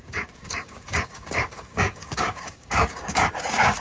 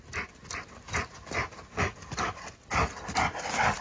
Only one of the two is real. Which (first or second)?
second